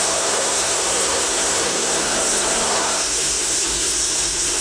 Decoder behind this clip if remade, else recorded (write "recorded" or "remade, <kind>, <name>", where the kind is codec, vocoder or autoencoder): remade, codec, SNAC